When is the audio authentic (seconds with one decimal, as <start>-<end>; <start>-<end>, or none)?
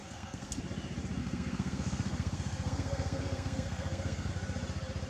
0.6-1.2; 4.3-5.1